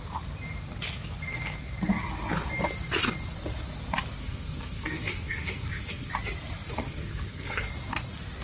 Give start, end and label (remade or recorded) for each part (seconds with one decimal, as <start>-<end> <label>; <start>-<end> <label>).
0.0-4.2 recorded; 4.2-6.1 remade; 6.1-6.8 recorded; 6.8-7.6 remade; 7.6-8.4 recorded